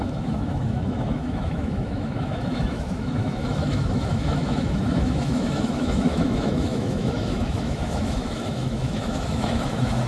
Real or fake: fake